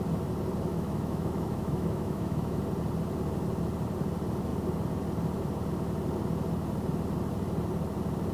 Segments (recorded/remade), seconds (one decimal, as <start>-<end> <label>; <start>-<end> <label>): 0.0-0.7 recorded; 0.7-2.6 remade; 2.6-8.3 recorded